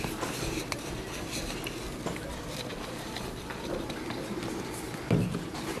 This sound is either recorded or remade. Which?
remade